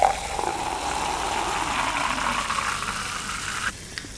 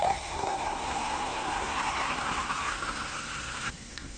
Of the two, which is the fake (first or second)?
second